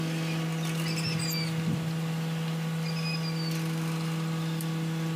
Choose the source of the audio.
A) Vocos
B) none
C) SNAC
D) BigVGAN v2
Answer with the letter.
B